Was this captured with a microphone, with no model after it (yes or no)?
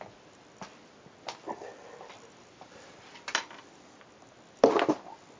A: yes